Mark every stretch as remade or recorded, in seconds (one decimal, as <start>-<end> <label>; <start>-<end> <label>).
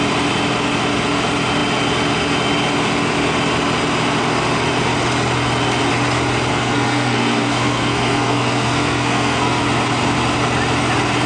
0.0-6.5 recorded; 6.5-9.6 remade; 9.6-11.3 recorded